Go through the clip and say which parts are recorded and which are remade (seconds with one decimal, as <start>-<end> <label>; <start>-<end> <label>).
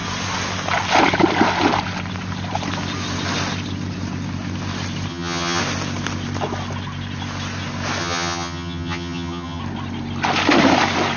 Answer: 0.0-5.1 recorded; 5.1-5.6 remade; 5.6-8.0 recorded; 8.0-9.6 remade; 9.6-11.2 recorded